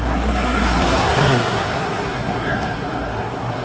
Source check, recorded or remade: remade